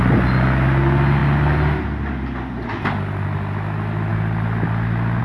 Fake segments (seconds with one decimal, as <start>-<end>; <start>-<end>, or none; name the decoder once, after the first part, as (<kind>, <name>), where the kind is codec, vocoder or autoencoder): none